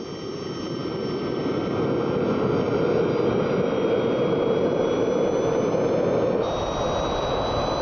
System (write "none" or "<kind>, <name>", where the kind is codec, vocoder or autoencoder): none